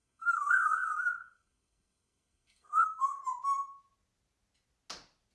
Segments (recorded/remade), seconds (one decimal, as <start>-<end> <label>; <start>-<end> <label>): 0.0-3.2 remade; 3.2-5.3 recorded